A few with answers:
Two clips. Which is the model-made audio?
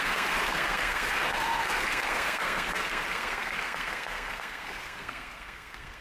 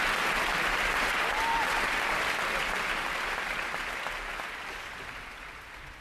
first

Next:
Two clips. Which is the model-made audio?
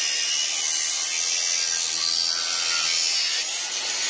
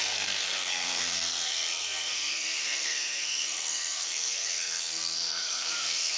second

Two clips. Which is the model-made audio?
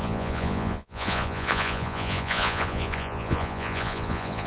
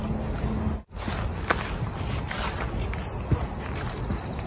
first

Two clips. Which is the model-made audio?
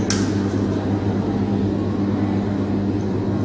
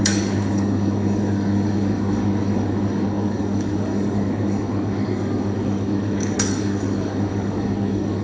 second